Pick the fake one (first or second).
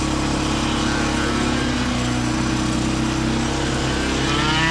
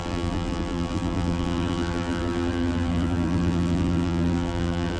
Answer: second